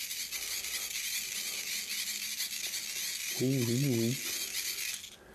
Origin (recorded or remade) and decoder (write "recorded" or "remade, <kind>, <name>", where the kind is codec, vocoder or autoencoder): recorded